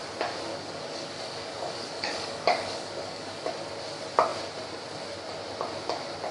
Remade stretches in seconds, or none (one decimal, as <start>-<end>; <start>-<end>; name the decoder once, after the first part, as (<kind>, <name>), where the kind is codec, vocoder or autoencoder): 0.5-3.5 (codec, DAC)